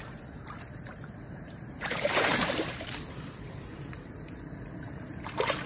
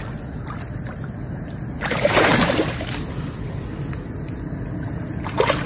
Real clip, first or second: second